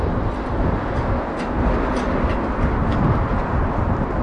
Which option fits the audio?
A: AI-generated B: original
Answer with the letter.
B